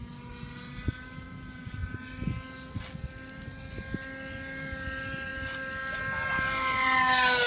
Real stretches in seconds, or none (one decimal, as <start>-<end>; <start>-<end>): 0.0-7.5